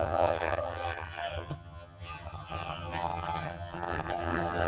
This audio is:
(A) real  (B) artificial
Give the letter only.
B